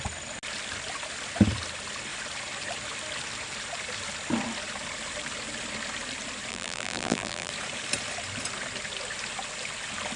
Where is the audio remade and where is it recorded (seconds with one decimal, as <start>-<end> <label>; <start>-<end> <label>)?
0.0-6.5 recorded; 6.5-7.5 remade; 7.5-10.2 recorded